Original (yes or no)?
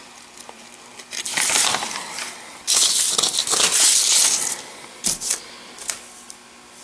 yes